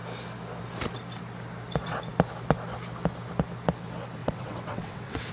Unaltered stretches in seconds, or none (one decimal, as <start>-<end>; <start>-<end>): 0.0-4.2